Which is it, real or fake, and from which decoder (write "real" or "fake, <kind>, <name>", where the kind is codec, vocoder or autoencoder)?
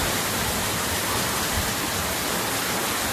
real